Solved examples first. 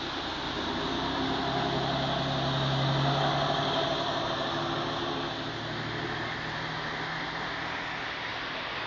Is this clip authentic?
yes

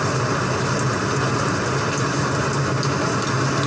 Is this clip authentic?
yes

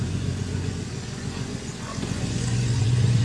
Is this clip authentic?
no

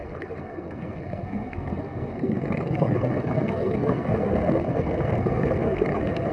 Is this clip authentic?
no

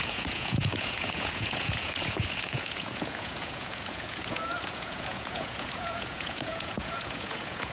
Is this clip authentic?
no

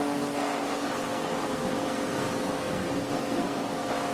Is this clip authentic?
no